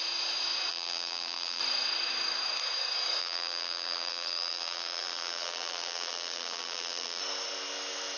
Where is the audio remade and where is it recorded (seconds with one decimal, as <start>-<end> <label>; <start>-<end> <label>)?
0.0-0.7 recorded; 0.7-1.6 remade; 1.6-3.2 recorded; 3.2-7.2 remade; 7.2-8.2 recorded